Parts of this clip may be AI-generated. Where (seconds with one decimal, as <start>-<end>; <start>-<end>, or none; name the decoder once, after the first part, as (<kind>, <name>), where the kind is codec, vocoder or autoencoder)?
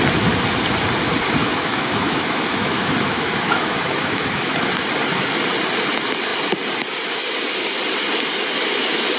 1.4-4.6 (autoencoder, DAC-VAE)